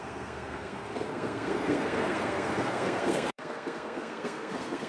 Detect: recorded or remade remade